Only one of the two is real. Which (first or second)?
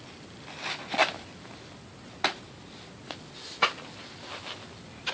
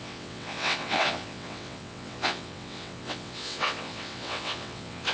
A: first